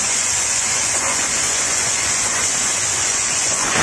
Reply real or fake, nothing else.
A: fake